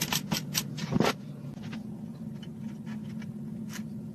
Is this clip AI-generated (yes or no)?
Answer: no